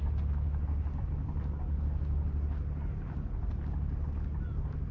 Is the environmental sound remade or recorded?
recorded